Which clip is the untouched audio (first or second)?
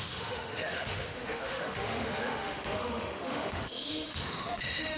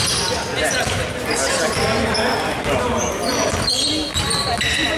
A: second